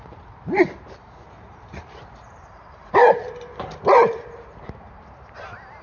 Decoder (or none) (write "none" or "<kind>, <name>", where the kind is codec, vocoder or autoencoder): vocoder, BigVGAN v2